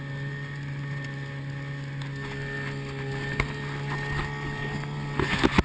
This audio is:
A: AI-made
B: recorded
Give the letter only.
B